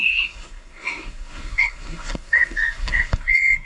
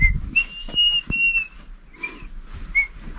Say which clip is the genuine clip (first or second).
second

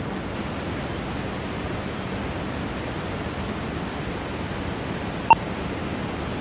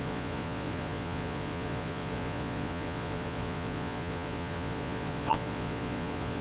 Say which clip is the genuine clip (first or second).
first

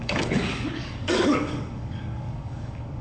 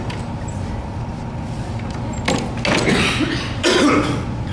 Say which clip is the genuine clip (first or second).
second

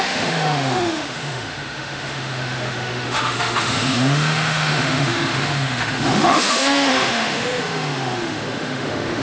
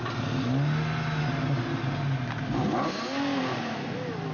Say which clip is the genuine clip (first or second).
second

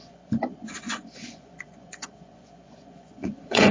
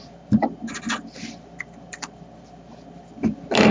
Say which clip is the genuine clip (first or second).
second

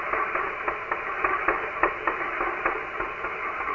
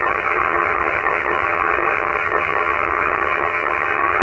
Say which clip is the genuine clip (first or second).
first